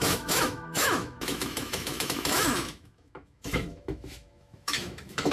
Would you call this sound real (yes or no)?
no